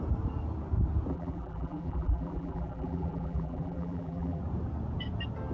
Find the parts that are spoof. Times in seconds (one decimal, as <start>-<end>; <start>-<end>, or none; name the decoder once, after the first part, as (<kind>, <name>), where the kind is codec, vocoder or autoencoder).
1.1-4.4 (vocoder, BigVGAN v2)